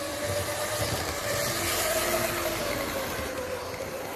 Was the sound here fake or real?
real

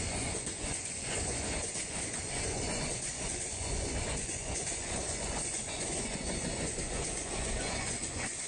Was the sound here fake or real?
fake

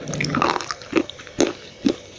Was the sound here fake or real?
real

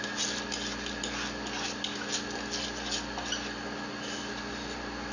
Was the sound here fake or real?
real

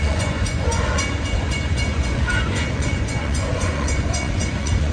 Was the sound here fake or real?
fake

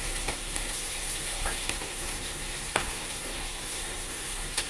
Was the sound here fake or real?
fake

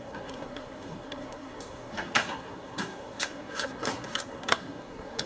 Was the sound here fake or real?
fake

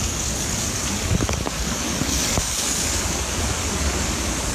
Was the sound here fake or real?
fake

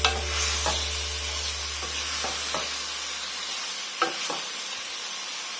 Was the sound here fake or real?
real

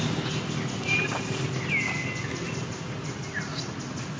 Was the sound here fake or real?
real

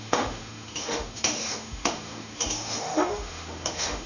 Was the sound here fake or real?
fake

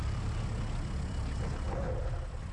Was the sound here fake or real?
real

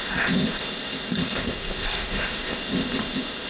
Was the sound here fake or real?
fake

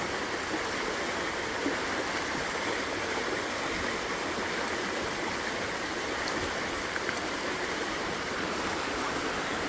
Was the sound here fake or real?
real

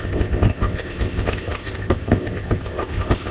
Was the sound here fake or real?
fake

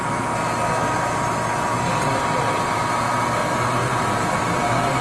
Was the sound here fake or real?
real